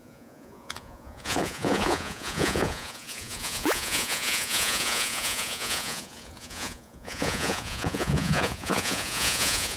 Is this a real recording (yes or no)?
no